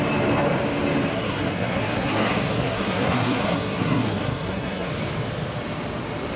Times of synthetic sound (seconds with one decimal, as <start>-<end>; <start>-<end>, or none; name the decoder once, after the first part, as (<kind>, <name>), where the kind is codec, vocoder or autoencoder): 1.1-4.9 (codec, SNAC)